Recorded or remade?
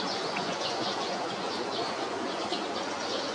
remade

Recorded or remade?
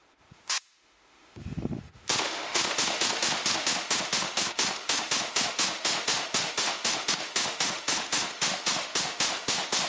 remade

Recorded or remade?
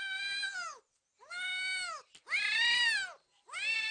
recorded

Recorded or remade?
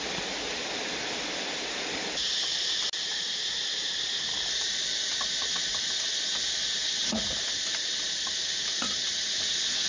recorded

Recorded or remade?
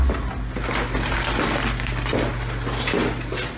recorded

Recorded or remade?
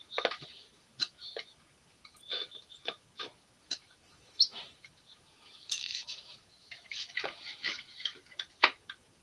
remade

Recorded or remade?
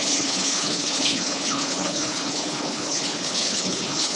remade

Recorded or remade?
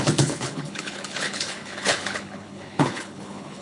remade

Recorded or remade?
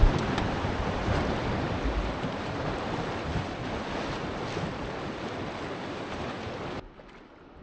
recorded